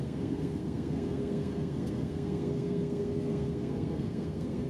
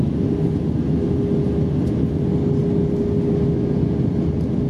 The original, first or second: second